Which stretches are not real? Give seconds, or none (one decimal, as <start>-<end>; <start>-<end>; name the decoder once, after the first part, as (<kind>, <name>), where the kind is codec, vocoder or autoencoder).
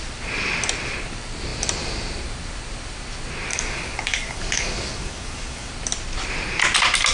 3.5-5.7 (codec, DAC)